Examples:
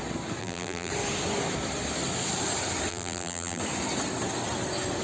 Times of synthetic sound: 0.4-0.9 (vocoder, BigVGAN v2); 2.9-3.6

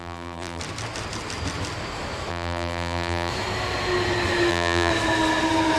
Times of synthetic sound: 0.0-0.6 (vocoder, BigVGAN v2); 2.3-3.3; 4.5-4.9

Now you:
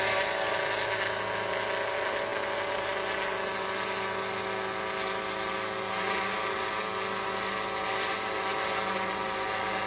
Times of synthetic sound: none

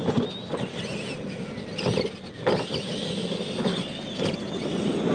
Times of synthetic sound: none

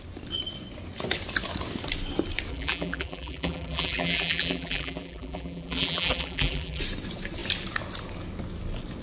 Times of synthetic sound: 2.5-6.8 (vocoder, BigVGAN v2)